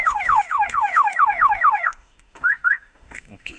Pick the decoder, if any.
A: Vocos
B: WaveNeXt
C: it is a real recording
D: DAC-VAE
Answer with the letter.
D